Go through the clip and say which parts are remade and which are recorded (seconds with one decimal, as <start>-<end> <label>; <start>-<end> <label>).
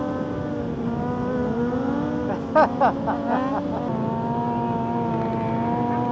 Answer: 0.0-6.1 recorded